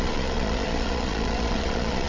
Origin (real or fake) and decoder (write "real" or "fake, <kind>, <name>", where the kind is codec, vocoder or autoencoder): fake, vocoder, Vocos